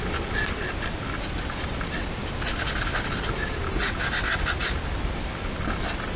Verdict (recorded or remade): recorded